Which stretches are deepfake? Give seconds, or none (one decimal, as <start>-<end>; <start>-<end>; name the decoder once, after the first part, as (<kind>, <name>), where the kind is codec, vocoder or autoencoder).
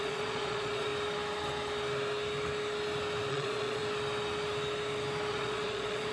0.0-0.9 (vocoder, Vocos); 3.3-3.8; 5.3-6.1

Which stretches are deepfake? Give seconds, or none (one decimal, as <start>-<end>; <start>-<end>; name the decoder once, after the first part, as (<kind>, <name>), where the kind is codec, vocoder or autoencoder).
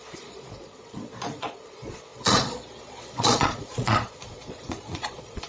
0.0-5.5 (vocoder, Vocos)